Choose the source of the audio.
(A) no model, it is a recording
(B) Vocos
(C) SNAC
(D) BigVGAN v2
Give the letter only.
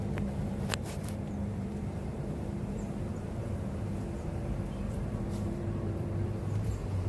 D